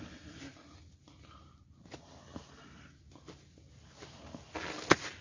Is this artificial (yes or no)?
no